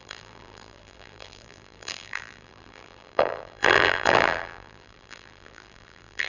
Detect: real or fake fake